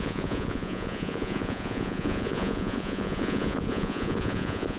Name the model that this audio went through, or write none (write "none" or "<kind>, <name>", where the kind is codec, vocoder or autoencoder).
vocoder, Vocos